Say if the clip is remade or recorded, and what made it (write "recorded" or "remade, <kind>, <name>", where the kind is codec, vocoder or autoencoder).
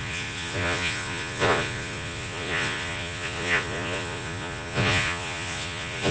remade, vocoder, Vocos